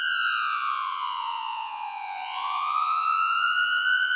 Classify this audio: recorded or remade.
remade